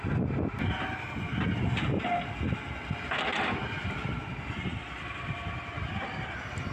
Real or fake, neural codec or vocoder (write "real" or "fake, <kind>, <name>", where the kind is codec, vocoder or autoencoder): real